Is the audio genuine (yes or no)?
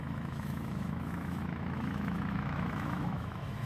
no